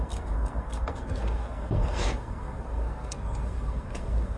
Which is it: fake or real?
fake